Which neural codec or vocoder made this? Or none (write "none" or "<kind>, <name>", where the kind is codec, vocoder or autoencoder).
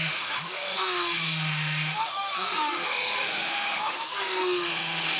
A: autoencoder, DAC-VAE